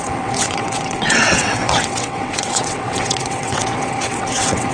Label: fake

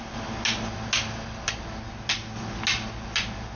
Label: real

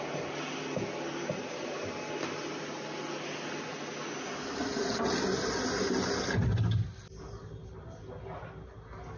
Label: real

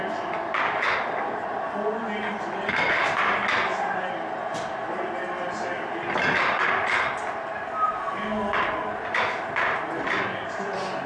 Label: real